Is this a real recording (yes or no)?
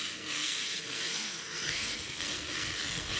no